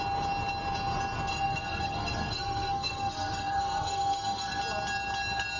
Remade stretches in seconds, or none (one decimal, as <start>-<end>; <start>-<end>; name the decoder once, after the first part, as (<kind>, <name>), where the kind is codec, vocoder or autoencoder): 1.3-4.6 (codec, SNAC)